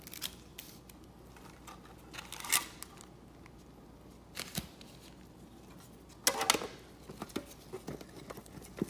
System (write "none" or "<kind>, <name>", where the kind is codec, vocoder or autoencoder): none